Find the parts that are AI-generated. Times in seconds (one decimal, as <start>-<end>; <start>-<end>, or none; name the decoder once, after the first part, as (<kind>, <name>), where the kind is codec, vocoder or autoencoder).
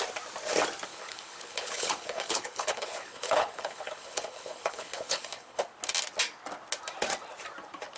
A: 0.9-5.6 (codec, HILCodec)